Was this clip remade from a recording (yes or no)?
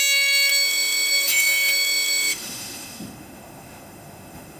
yes